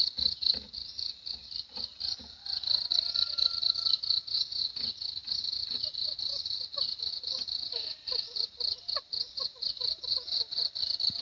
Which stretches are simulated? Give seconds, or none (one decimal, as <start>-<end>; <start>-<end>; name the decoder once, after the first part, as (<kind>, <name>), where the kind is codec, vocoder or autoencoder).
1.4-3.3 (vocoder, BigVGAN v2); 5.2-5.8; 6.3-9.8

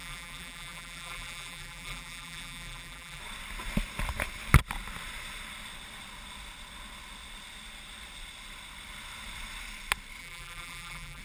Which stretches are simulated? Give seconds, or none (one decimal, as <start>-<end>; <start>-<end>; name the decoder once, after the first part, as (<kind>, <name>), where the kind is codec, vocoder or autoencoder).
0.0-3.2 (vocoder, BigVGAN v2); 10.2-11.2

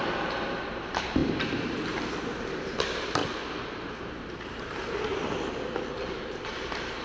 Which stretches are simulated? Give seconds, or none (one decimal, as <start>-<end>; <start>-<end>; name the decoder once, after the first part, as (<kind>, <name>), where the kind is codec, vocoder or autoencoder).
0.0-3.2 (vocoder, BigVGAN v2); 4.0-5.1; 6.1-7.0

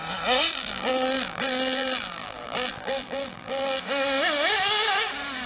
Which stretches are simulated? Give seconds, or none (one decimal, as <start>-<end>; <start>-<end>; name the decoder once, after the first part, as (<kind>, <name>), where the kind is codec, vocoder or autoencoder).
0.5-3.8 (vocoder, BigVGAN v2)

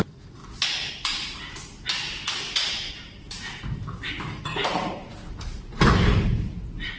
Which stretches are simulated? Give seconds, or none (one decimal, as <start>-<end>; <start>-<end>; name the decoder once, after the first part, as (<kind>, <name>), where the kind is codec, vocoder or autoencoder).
0.0-0.4 (vocoder, BigVGAN v2); 4.1-7.0

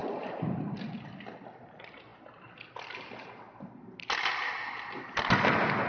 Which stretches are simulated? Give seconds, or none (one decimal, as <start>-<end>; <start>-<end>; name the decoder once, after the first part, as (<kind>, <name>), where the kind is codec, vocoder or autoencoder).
0.0-0.6 (vocoder, BigVGAN v2)

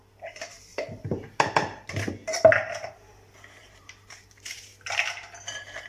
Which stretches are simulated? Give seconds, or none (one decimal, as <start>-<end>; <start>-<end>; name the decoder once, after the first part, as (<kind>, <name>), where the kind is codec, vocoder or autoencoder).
0.7-2.1 (vocoder, BigVGAN v2); 3.6-4.7